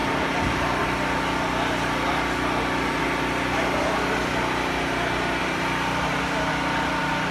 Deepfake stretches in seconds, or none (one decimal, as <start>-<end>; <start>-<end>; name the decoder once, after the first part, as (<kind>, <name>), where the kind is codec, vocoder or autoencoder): 5.4-6.5 (vocoder, BigVGAN v2)